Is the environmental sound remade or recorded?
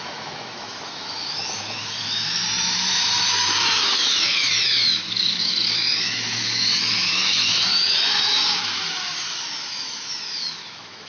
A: remade